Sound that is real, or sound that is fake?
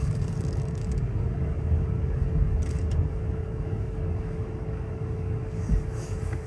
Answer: fake